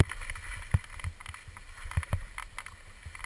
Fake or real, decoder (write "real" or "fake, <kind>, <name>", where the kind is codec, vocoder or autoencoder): real